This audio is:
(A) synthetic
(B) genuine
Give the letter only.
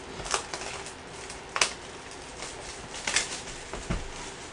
B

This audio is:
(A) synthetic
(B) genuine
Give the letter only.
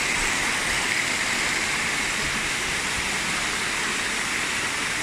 B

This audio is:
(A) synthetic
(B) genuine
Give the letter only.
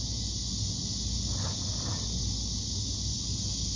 B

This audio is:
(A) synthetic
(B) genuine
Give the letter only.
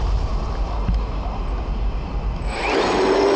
B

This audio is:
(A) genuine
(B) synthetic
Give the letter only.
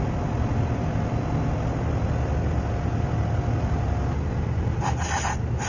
A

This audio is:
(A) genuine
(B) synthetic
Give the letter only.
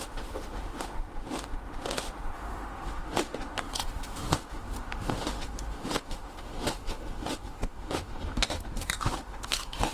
B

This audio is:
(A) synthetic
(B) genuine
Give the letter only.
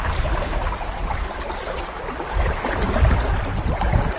B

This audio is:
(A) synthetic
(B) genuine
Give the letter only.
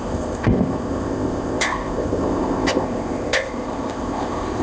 A